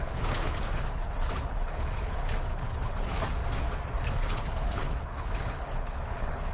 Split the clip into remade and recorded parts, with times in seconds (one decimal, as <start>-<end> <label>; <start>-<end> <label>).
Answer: 0.0-3.4 remade; 3.4-4.0 recorded; 4.0-6.5 remade